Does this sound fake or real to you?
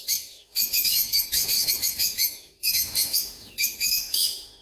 fake